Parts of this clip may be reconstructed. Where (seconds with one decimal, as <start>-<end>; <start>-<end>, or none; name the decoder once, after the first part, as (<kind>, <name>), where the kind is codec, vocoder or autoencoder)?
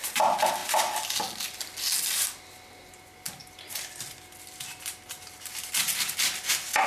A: none